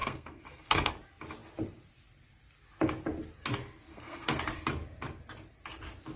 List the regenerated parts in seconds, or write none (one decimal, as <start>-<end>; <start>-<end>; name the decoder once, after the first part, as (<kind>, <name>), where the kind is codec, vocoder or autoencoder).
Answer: 0.0-0.9 (codec, SNAC); 3.9-4.4